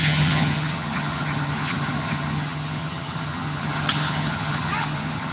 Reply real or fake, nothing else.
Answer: fake